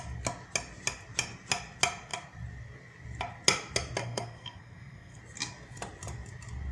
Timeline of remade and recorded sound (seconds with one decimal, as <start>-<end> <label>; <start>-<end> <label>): 0.0-4.0 recorded; 4.0-5.2 remade; 5.2-6.7 recorded

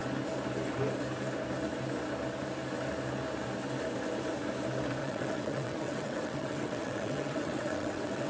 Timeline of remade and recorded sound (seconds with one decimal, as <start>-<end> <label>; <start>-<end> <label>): 0.0-5.0 recorded; 5.0-8.3 remade

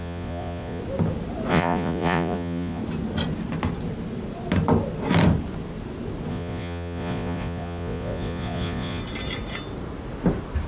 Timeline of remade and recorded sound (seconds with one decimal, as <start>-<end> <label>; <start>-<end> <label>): 0.0-0.8 remade; 0.8-1.5 recorded; 1.5-2.8 remade; 2.8-6.3 recorded; 6.3-9.0 remade; 9.0-10.7 recorded